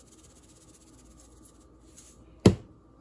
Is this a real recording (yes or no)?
yes